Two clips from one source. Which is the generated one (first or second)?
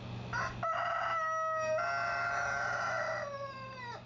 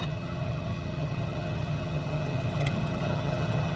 second